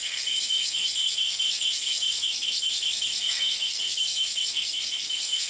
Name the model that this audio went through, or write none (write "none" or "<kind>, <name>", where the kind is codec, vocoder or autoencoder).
codec, SNAC